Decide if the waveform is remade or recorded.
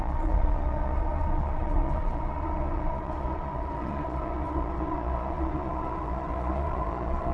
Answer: remade